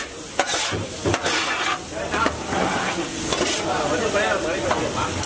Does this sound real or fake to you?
real